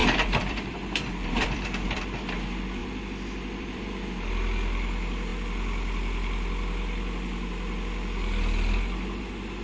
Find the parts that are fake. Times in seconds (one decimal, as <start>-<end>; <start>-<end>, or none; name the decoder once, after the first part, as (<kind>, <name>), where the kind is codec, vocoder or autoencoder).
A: 0.0-2.0 (vocoder, BigVGAN v2); 2.8-3.8